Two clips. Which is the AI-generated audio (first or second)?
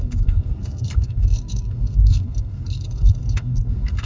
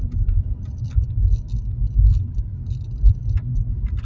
first